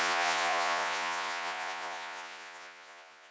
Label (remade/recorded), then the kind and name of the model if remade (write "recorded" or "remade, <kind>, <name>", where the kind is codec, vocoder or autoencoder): remade, vocoder, Vocos